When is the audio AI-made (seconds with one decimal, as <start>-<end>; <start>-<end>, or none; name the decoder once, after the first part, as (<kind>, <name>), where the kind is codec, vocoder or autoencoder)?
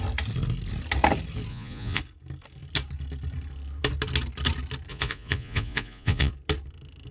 1.5-2.0 (vocoder, Vocos); 4.9-6.3